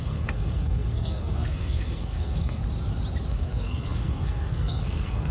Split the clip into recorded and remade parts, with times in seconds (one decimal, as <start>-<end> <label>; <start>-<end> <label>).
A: 0.0-2.6 remade; 2.6-3.3 recorded; 3.3-5.3 remade